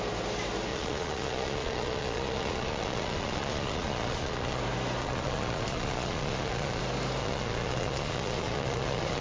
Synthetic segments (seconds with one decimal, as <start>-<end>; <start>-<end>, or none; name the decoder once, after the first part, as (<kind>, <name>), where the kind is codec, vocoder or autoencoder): 0.7-4.6 (vocoder, Vocos); 5.0-6.8; 7.2-9.2